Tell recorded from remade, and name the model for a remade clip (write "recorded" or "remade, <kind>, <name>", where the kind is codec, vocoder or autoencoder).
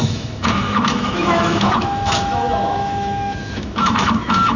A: remade, autoencoder, DAC-VAE